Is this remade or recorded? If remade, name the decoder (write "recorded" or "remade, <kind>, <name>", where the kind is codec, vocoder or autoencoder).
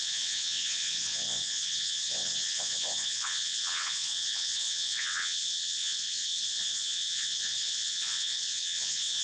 remade, vocoder, WaveNeXt